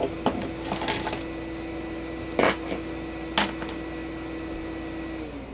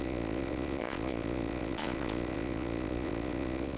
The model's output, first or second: second